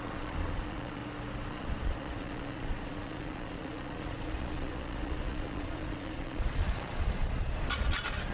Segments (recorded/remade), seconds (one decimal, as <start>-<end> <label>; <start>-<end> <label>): 0.0-1.0 remade; 1.0-1.5 recorded; 1.5-8.3 remade